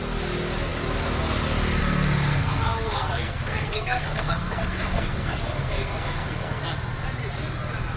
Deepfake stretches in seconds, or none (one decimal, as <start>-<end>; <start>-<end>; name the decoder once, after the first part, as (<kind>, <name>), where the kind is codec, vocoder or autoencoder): 1.8-6.6 (codec, SNAC)